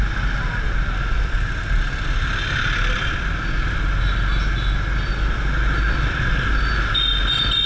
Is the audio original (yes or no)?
yes